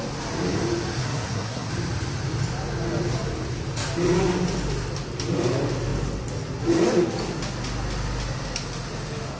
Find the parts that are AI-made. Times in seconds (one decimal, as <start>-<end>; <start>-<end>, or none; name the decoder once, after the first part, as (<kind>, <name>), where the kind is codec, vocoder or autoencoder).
1.0-1.7 (codec, SNAC)